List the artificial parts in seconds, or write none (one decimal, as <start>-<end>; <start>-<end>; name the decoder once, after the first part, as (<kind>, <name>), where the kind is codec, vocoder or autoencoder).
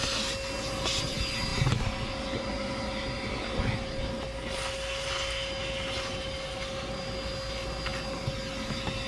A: none